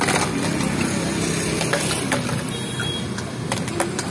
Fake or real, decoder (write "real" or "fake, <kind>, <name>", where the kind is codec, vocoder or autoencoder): real